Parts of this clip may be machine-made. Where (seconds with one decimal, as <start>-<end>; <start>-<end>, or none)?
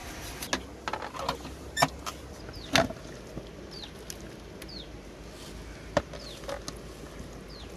none